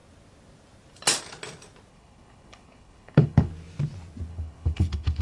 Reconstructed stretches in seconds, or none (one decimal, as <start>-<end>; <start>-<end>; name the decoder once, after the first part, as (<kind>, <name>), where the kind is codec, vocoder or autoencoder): 1.9-3.5 (codec, HILCodec); 4.3-5.2